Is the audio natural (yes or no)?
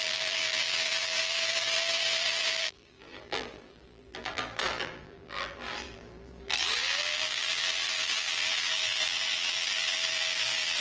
no